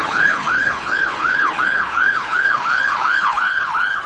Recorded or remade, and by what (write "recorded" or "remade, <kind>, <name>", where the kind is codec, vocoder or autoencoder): remade, codec, HILCodec